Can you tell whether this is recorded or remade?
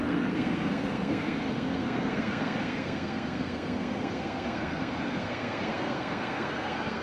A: remade